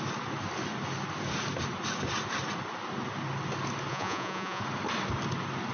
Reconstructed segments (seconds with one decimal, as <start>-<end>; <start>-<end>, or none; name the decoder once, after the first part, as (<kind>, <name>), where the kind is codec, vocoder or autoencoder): 3.9-4.6 (vocoder, Vocos)